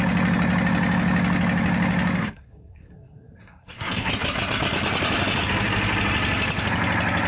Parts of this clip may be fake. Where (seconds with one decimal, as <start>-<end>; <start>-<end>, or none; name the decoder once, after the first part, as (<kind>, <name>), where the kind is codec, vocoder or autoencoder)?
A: 2.2-4.1 (codec, SNAC)